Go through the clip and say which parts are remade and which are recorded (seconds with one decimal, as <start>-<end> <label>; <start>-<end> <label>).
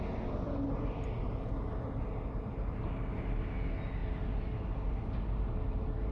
0.0-6.1 recorded